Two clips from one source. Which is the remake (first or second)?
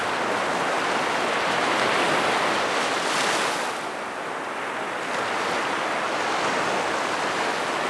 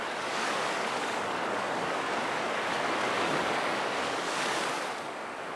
second